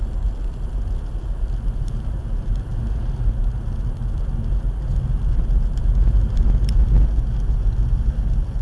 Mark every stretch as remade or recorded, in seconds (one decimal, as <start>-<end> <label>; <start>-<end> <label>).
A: 0.0-8.6 recorded